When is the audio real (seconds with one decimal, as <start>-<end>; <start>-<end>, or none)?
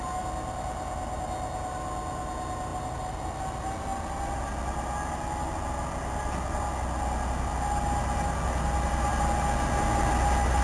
0.0-10.6